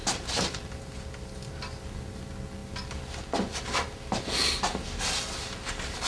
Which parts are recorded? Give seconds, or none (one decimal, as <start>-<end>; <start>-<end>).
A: 0.0-6.1